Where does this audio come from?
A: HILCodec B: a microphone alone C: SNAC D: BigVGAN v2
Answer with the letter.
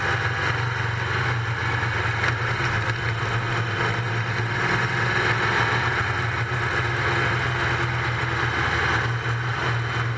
B